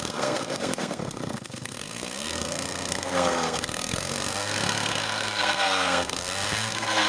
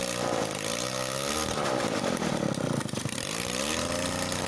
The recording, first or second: second